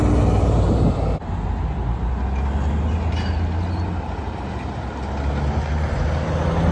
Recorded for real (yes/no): yes